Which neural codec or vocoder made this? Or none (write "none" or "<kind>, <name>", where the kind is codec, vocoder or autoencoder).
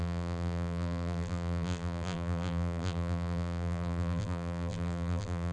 vocoder, BigVGAN v2